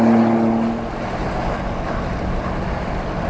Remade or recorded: recorded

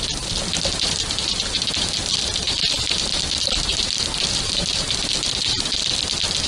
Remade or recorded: recorded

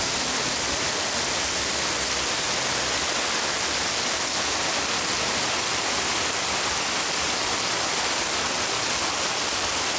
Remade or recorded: recorded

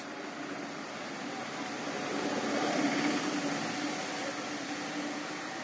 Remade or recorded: recorded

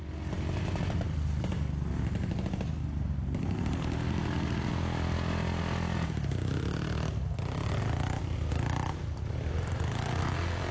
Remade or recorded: recorded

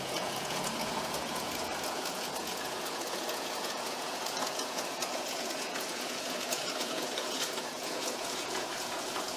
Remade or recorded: remade